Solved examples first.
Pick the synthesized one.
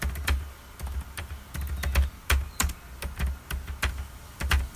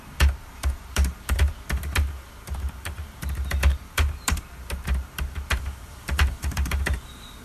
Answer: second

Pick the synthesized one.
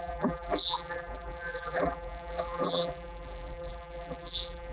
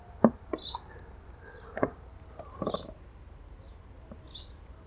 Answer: first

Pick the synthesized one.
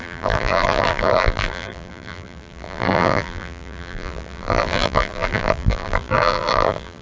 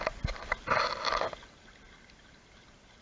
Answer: first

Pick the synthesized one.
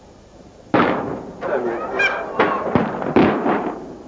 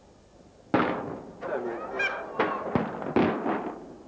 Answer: first